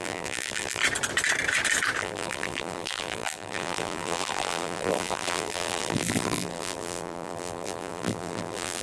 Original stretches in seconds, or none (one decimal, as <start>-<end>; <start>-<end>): 0.8-2.0